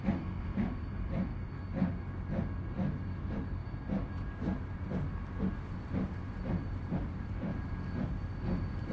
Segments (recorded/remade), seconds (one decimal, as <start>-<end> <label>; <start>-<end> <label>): 0.0-1.3 remade; 1.3-2.5 recorded; 2.5-3.6 remade; 3.6-5.4 recorded; 5.4-7.5 remade; 7.5-8.0 recorded; 8.0-8.9 remade

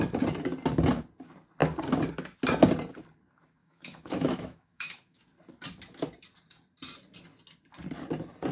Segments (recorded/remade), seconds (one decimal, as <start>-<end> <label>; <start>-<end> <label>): 0.0-3.6 recorded; 3.6-5.2 remade; 5.2-8.5 recorded

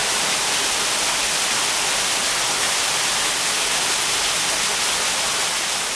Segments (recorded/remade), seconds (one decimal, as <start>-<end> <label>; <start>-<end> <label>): 0.0-6.0 recorded

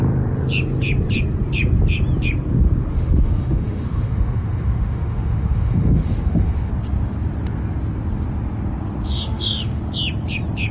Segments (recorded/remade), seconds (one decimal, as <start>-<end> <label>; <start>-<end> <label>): 0.0-2.9 recorded; 2.9-6.7 remade; 6.7-9.1 recorded; 9.1-9.8 remade; 9.8-10.7 recorded

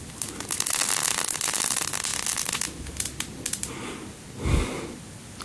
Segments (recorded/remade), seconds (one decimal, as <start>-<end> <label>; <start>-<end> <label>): 0.0-5.4 recorded

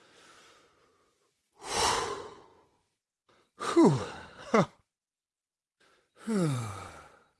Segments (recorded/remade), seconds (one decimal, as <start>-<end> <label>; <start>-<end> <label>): 0.0-2.5 recorded; 2.5-6.7 remade; 6.7-7.4 recorded